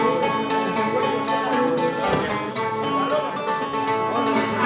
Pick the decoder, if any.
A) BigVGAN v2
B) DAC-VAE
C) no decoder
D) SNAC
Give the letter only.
C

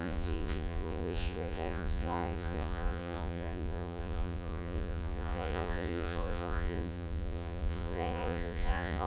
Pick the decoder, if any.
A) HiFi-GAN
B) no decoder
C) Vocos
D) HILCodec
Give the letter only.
C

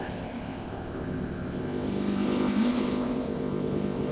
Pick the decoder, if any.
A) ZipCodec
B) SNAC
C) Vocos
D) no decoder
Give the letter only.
A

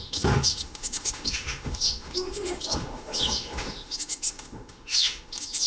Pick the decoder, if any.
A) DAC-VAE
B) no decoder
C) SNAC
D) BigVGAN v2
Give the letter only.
A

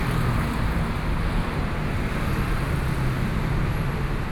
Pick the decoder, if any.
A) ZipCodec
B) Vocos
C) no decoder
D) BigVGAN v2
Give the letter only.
C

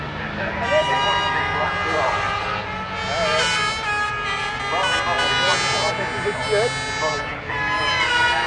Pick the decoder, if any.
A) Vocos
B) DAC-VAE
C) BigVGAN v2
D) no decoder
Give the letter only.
D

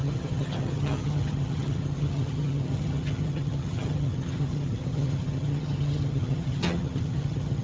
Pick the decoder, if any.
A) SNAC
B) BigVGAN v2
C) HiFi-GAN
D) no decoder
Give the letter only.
C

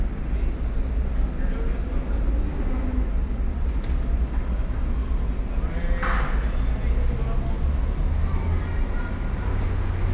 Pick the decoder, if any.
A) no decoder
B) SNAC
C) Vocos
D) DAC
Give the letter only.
A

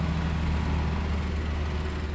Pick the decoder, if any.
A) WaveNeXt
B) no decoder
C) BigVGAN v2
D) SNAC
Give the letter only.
B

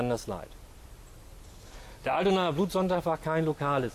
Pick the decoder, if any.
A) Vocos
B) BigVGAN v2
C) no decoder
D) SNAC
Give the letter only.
C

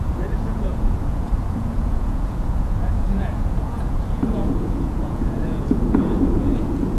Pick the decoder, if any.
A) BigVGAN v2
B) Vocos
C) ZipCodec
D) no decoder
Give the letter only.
B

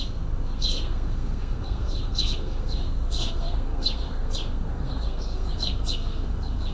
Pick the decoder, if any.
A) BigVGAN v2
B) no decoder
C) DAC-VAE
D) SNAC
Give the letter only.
D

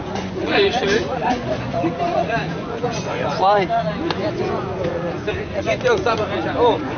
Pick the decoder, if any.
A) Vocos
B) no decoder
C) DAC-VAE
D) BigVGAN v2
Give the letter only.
A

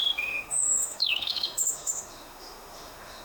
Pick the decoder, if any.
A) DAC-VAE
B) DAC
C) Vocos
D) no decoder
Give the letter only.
A